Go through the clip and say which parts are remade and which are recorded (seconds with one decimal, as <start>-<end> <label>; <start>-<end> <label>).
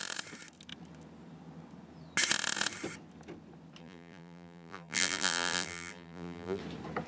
0.0-3.8 recorded; 3.8-6.6 remade; 6.6-7.1 recorded